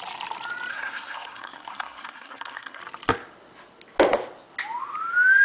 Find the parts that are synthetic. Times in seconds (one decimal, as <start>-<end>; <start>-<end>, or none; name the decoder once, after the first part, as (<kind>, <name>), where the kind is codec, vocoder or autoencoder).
0.7-2.8 (codec, SNAC)